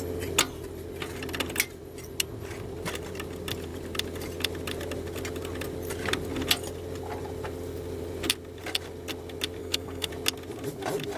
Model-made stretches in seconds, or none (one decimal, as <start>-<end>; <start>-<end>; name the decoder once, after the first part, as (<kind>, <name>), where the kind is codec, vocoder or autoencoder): 9.6-10.1 (codec, SNAC)